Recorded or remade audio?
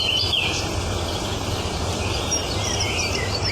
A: recorded